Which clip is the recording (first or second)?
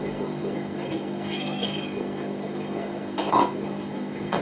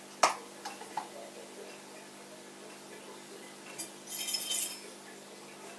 second